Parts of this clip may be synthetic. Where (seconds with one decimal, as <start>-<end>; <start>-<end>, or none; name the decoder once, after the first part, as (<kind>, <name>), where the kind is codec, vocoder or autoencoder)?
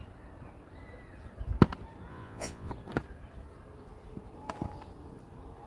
2.1-2.7 (vocoder, Vocos)